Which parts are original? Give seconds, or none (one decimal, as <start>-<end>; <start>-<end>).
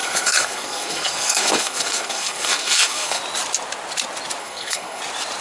3.2-4.4; 5.0-5.4